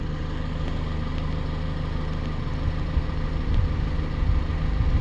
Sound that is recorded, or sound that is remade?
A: recorded